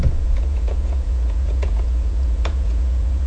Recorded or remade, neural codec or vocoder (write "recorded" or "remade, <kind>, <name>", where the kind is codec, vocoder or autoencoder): remade, vocoder, Vocos